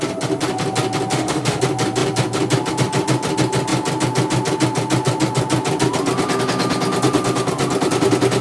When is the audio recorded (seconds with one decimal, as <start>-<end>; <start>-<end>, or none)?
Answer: 0.0-1.1; 1.6-8.4